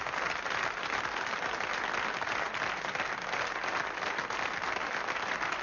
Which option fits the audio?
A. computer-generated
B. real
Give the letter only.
B